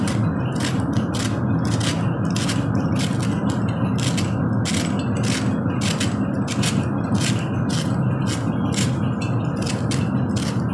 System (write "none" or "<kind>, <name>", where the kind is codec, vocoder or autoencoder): none